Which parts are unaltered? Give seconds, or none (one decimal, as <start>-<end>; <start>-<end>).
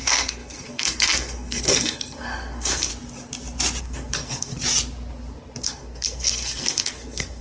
2.9-3.8; 4.5-5.6